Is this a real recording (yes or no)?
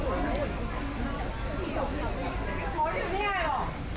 yes